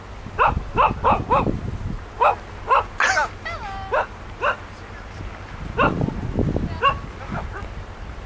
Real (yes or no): yes